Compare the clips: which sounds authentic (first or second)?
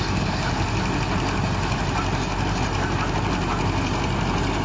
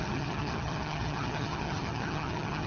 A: first